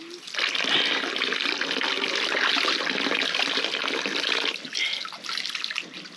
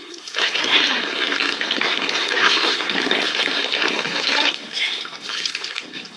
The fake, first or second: second